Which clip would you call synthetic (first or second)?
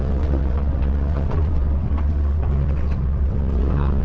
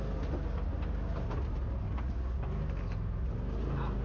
first